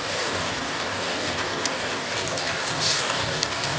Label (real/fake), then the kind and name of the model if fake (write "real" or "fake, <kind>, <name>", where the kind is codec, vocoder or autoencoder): fake, codec, DAC